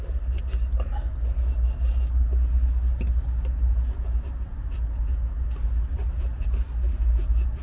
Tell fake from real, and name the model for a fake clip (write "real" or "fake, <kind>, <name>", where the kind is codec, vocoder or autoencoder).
real